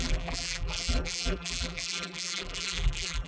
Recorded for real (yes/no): no